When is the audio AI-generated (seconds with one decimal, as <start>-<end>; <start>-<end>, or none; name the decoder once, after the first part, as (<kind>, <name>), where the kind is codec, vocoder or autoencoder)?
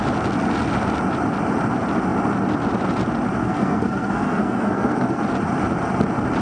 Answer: 3.4-5.2 (codec, SNAC)